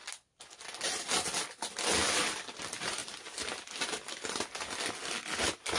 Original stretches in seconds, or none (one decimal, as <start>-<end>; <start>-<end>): 0.0-5.8